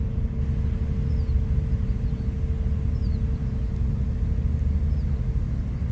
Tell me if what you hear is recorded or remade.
recorded